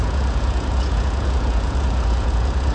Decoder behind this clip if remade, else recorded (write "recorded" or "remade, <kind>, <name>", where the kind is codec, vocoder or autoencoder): remade, vocoder, Vocos